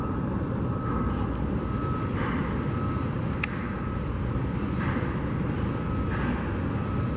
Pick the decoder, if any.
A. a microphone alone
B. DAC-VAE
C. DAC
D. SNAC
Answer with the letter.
A